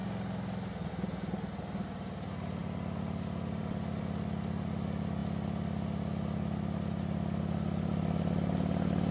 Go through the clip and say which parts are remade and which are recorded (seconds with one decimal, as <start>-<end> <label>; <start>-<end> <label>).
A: 0.0-9.1 recorded